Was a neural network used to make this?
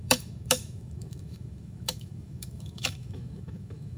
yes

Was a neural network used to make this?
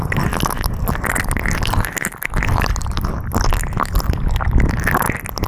no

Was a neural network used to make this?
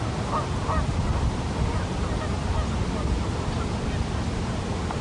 no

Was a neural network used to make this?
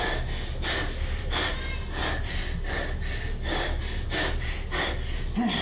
no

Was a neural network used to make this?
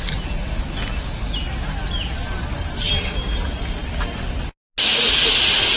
no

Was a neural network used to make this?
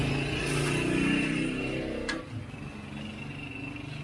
no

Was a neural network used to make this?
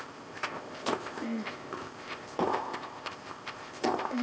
yes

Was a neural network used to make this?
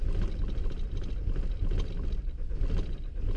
no